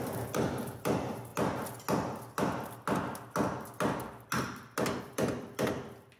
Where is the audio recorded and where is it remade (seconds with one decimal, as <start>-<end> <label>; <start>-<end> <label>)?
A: 0.0-1.3 remade; 1.3-5.0 recorded; 5.0-6.2 remade